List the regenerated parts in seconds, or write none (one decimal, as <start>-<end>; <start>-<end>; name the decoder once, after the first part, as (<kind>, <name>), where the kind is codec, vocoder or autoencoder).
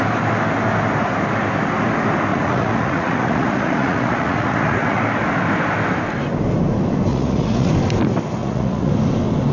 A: 2.3-5.0 (vocoder, Vocos); 7.1-7.7; 8.4-8.9